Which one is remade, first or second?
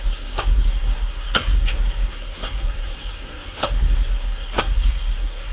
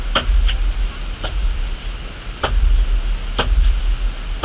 first